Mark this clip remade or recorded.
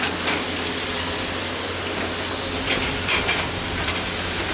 recorded